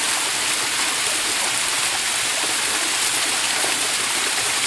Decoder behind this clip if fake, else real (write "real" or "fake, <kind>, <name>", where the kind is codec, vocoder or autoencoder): real